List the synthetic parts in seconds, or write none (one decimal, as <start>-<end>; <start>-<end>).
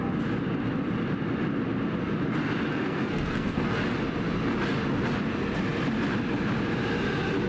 2.7-3.8